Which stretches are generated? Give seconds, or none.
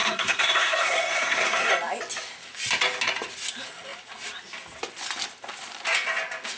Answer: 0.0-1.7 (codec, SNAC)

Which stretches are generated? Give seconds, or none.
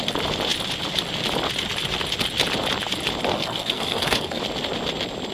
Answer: 3.3-4.4 (codec, SNAC)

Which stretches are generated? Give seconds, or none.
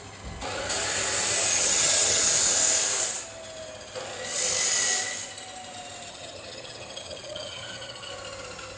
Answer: 1.5-2.3 (vocoder, HiFi-GAN); 6.1-8.1